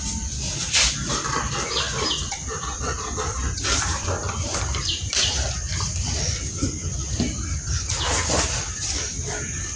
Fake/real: real